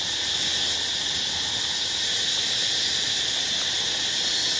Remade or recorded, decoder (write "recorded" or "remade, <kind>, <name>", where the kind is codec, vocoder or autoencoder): recorded